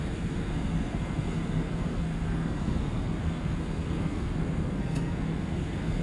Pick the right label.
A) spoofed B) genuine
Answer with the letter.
A